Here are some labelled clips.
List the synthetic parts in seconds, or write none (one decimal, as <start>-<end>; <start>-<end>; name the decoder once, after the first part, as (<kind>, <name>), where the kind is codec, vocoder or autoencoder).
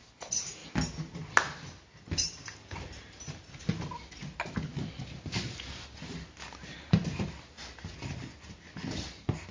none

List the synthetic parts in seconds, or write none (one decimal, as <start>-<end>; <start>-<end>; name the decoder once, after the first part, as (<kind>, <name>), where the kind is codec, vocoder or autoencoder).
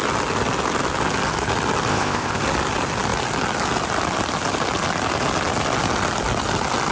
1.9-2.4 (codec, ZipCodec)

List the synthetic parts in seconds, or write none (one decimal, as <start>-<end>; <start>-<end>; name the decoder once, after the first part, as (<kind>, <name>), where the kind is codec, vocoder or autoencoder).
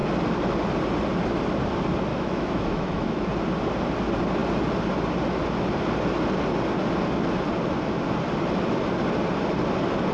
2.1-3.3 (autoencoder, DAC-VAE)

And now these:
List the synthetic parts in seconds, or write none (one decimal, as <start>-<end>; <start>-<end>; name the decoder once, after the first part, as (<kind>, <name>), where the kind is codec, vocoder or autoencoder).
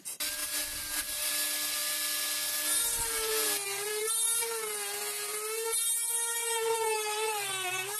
0.4-1.3 (vocoder, BigVGAN v2); 6.3-7.5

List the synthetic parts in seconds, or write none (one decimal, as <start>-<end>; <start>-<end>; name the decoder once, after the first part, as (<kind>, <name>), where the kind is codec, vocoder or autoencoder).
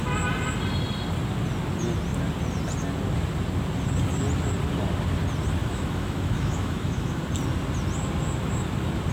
5.6-7.2 (autoencoder, DAC-VAE)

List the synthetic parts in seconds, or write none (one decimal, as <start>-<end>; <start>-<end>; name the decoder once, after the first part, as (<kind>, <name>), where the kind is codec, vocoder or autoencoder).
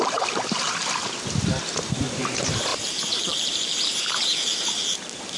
0.0-0.8 (vocoder, BigVGAN v2); 1.9-5.4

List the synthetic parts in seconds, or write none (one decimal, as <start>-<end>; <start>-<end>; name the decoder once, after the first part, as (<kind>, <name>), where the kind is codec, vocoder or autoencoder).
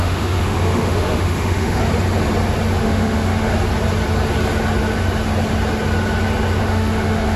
0.0-1.8 (autoencoder, DAC-VAE); 2.8-3.5; 6.6-7.4